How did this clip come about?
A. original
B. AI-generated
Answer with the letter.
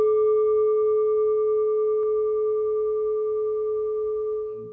A